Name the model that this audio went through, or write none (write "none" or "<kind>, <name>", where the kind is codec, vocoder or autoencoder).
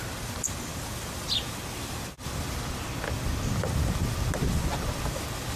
none